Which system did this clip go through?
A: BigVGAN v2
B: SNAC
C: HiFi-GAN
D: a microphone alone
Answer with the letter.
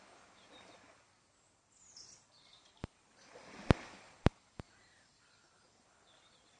D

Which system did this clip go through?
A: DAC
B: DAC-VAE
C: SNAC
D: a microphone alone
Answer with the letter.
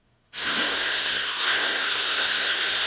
C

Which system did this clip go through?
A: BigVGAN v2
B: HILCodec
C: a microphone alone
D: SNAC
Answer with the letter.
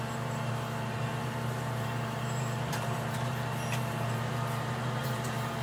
A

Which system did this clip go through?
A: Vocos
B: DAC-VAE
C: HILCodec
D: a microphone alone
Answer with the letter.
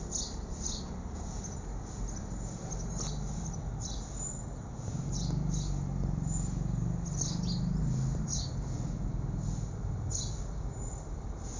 D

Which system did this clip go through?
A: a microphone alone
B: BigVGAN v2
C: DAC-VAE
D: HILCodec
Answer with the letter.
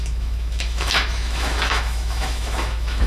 C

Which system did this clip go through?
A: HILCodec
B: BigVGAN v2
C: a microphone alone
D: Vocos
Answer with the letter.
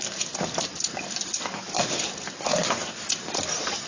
C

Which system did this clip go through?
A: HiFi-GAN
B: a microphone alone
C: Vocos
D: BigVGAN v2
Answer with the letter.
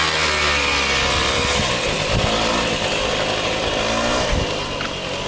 B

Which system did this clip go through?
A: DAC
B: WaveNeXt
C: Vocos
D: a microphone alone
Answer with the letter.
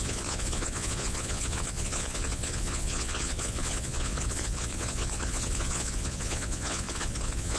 C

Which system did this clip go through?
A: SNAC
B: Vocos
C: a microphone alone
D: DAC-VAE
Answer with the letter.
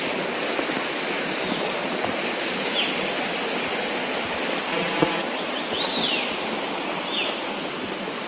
C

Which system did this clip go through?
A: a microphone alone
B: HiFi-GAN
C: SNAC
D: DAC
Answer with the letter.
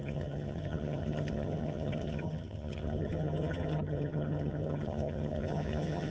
B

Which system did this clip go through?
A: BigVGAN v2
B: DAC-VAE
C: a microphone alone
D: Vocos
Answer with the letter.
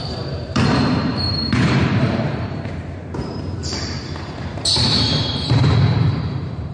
A